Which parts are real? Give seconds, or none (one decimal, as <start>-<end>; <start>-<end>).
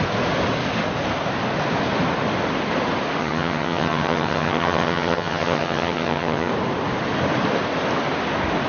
0.0-3.2; 6.5-8.7